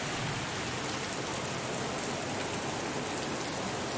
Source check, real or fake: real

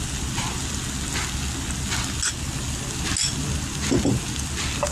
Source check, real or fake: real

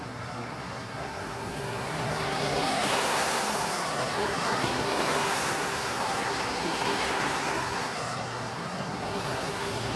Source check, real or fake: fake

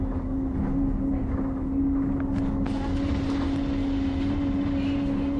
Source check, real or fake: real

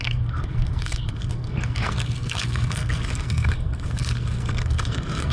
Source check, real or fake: fake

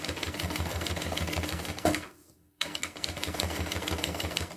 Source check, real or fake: fake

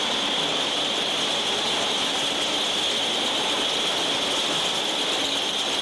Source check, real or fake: real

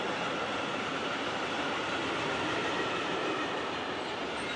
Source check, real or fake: real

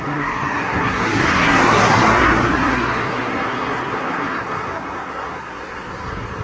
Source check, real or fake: fake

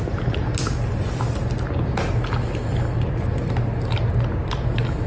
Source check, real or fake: real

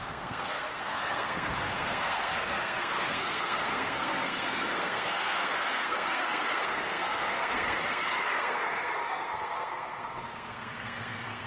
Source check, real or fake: fake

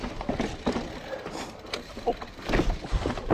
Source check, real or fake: real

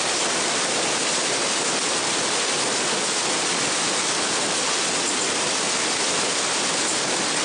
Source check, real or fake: real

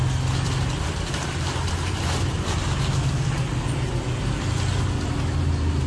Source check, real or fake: real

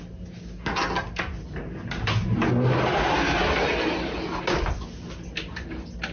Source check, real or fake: real